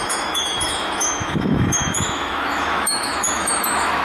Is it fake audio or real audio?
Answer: fake